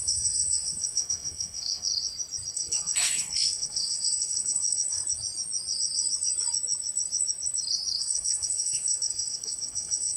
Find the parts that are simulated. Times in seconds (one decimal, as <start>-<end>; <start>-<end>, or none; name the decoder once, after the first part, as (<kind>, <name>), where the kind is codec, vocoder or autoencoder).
0.0-1.9 (codec, SNAC); 2.5-5.0; 8.0-10.2